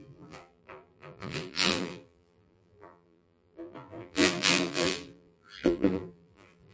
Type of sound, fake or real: fake